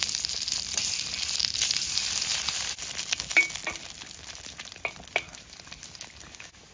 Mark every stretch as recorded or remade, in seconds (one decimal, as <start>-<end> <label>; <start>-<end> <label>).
0.0-6.7 recorded